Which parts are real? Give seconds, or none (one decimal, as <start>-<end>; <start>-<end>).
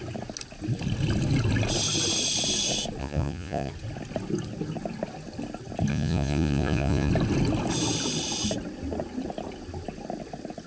0.0-3.0; 3.7-5.9; 7.1-10.7